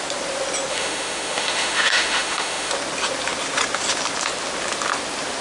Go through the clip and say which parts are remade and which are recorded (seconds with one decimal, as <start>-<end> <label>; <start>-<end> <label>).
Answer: 0.0-0.7 recorded; 0.7-2.7 remade; 2.7-5.4 recorded